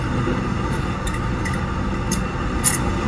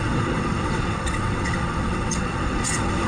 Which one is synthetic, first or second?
second